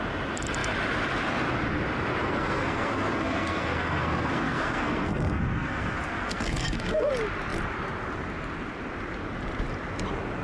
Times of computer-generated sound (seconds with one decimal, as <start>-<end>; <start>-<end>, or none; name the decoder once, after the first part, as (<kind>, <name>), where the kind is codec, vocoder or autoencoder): 2.2-7.1 (codec, SNAC)